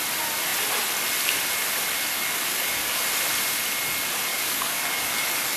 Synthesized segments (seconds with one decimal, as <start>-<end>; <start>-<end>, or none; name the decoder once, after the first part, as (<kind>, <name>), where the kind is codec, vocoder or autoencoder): 2.1-3.0 (codec, DAC); 4.3-5.6